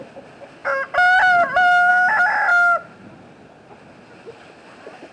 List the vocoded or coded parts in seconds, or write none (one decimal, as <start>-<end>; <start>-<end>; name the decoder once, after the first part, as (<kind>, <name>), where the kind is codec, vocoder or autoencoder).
none